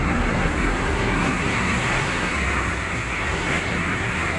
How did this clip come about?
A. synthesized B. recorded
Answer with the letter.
A